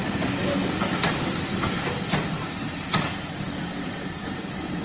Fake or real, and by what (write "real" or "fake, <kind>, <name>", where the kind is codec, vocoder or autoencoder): real